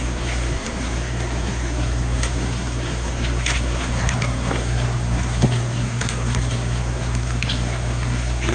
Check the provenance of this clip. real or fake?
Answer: fake